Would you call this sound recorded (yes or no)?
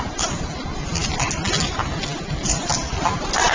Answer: yes